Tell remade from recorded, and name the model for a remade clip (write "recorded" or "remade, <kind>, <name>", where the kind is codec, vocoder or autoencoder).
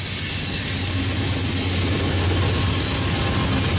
recorded